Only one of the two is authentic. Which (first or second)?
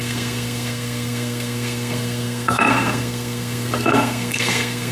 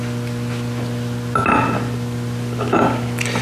second